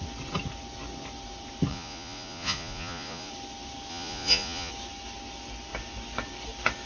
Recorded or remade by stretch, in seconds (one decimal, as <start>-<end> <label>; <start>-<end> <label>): 0.0-1.7 recorded; 1.7-3.3 remade; 3.3-3.9 recorded; 3.9-4.7 remade; 4.7-6.9 recorded